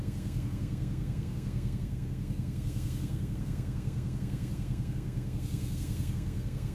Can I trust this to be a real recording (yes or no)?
no